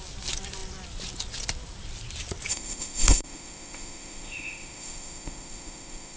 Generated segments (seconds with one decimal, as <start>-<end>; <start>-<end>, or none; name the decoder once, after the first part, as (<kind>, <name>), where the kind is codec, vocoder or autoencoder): 2.5-6.2 (autoencoder, DAC-VAE)

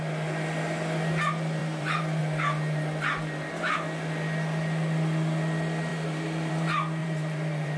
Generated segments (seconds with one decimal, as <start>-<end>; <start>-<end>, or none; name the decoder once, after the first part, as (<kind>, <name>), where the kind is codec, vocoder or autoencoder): 1.6-2.2 (vocoder, BigVGAN v2); 5.9-6.5; 7.0-7.8

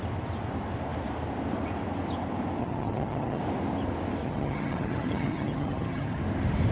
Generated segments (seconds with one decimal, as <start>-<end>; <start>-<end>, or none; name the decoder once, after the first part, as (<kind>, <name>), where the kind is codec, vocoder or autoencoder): 2.6-3.4 (vocoder, HiFi-GAN); 4.2-6.2

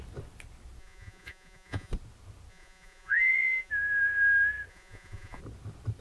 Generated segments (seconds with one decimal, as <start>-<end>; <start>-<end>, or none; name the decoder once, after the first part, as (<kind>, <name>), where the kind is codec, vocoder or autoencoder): 0.8-1.9 (vocoder, Vocos); 2.5-3.7; 4.7-5.4